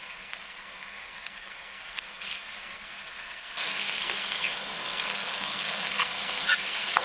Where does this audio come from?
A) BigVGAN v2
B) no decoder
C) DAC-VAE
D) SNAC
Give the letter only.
D